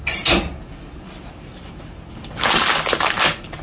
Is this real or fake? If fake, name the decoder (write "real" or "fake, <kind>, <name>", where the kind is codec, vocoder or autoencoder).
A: real